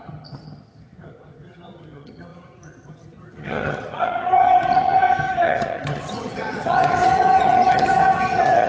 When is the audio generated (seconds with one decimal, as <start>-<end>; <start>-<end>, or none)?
0.0-8.7